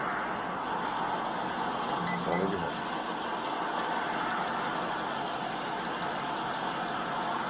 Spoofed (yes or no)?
no